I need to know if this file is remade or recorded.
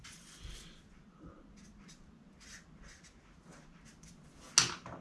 recorded